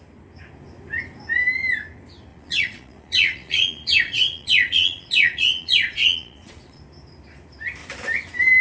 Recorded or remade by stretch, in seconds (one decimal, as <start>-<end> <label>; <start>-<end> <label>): 0.0-2.3 recorded; 2.3-6.8 remade; 6.8-8.6 recorded